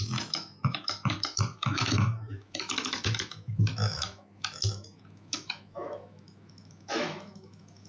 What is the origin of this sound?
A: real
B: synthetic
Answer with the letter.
B